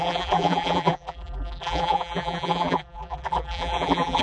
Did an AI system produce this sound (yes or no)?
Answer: yes